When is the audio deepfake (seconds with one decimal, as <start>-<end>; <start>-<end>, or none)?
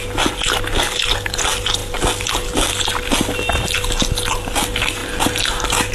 none